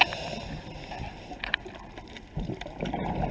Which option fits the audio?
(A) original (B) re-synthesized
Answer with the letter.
A